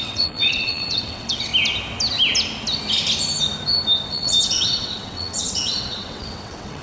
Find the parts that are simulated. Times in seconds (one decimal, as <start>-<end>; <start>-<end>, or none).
0.0-1.5; 4.1-6.8